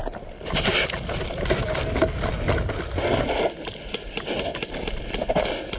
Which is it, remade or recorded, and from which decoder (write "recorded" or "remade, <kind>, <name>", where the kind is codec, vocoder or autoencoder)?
recorded